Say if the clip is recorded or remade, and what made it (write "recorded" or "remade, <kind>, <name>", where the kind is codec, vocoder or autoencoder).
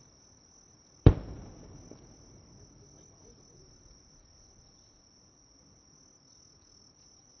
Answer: remade, vocoder, BigVGAN v2